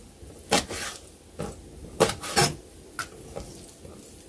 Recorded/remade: recorded